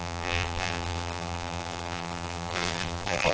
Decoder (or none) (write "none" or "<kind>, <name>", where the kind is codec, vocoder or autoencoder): vocoder, BigVGAN v2